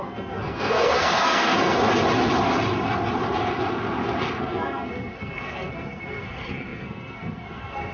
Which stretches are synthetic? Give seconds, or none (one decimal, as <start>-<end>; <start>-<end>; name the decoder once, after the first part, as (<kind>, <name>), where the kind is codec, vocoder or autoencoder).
0.0-1.8 (codec, SNAC); 4.4-7.9